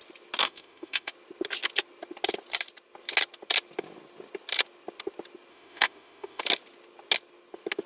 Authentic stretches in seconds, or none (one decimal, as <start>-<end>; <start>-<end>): 0.0-0.4; 1.1-5.5; 6.4-7.9